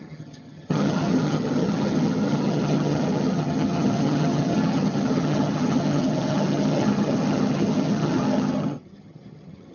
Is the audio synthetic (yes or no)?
yes